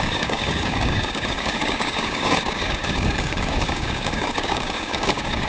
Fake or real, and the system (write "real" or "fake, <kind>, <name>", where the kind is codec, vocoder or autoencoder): fake, codec, DAC